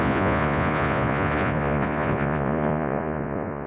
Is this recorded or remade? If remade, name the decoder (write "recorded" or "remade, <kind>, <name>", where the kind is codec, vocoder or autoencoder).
remade, vocoder, Vocos